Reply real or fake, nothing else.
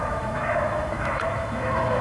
fake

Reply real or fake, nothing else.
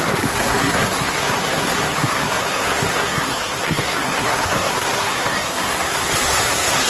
fake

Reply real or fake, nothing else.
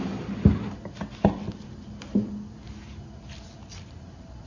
real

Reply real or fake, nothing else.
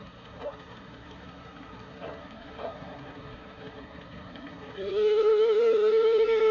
fake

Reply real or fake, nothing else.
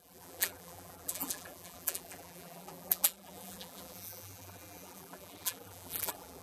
fake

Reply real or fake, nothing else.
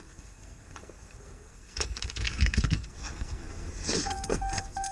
fake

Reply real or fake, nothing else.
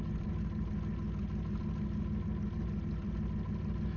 real